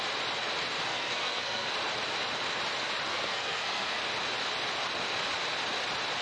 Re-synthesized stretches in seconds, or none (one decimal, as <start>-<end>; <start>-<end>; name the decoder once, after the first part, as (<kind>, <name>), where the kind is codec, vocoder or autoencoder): 0.9-1.7 (codec, SNAC); 3.1-4.0

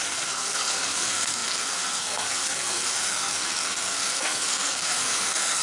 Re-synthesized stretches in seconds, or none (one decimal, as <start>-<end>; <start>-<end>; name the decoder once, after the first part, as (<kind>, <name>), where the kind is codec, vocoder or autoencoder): 0.0-5.6 (codec, SNAC)

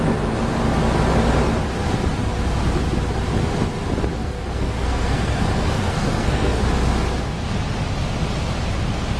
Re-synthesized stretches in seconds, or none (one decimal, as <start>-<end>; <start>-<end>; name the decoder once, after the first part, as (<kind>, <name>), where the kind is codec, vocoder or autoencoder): 4.1-6.6 (codec, SNAC)

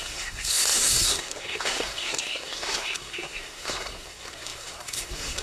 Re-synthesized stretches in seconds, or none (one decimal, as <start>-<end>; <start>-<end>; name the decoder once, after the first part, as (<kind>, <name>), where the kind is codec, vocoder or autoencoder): 0.0-5.4 (codec, SNAC)

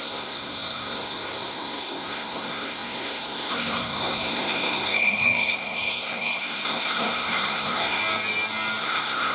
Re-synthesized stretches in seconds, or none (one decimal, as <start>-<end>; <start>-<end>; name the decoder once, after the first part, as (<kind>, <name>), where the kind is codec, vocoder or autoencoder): 0.0-8.0 (codec, SNAC); 8.8-9.3